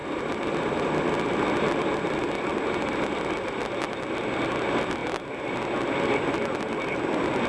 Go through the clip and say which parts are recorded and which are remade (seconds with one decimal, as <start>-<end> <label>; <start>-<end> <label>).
0.0-4.1 recorded; 4.1-5.0 remade; 5.0-6.3 recorded; 6.3-7.5 remade